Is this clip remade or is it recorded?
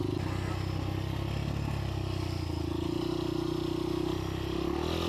recorded